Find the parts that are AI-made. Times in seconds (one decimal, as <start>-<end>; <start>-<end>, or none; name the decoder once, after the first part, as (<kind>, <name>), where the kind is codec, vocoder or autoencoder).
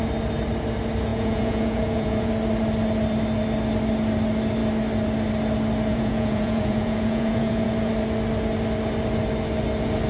1.1-2.3 (vocoder, Vocos); 5.9-7.9